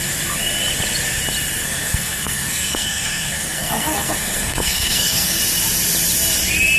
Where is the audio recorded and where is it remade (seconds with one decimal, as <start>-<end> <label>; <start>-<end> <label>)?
0.0-1.6 recorded; 1.6-5.4 remade; 5.4-6.8 recorded